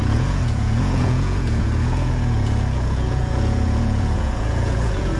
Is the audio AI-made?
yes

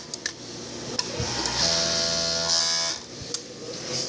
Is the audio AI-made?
no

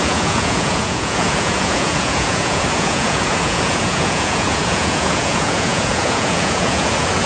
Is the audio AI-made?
yes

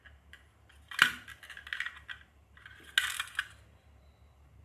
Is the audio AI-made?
no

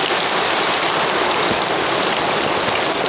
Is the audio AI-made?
no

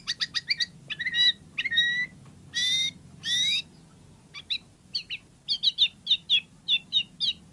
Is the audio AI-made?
no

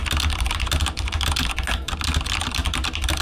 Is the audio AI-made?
no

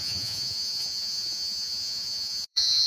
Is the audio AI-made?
yes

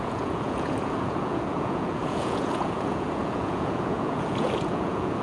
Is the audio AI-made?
yes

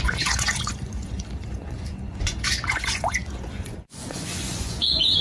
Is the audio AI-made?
yes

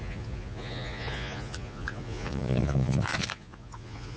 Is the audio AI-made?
yes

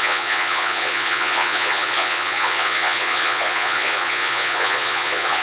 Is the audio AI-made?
yes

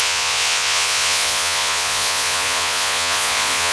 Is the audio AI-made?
yes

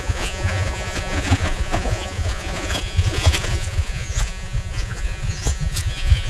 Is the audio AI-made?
yes